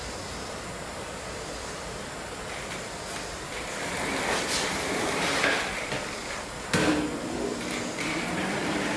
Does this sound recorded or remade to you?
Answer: remade